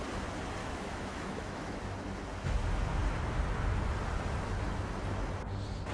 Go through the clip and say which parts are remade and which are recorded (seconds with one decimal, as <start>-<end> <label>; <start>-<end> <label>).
0.0-0.6 recorded; 0.6-1.8 remade; 1.8-5.9 recorded